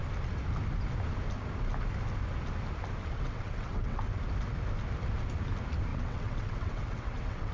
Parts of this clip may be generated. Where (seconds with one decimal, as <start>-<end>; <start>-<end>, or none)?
3.0-4.0; 5.9-7.5